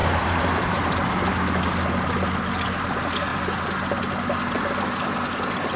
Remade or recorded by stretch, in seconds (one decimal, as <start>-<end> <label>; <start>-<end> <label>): 0.0-5.8 recorded